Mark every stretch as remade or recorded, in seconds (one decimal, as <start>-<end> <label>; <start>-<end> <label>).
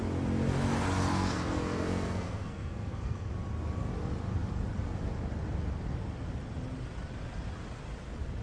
0.0-1.1 recorded; 1.1-3.3 remade; 3.3-8.4 recorded